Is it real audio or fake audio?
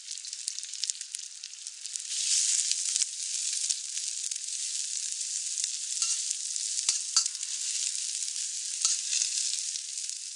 real